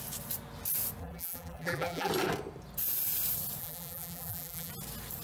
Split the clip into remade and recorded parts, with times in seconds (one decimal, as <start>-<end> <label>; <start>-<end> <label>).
0.0-1.0 recorded; 1.0-2.1 remade; 2.1-3.6 recorded; 3.6-4.7 remade; 4.7-5.2 recorded